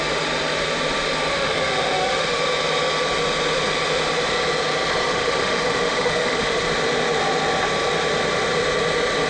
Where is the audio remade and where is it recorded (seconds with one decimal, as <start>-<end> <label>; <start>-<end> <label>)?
0.0-1.3 recorded; 1.3-2.4 remade; 2.4-5.1 recorded; 5.1-6.6 remade; 6.6-9.3 recorded